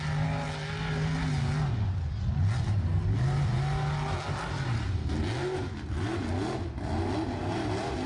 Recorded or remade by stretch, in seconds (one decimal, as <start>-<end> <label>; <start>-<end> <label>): 0.0-8.1 recorded